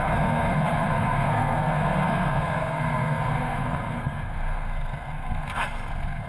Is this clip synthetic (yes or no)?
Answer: yes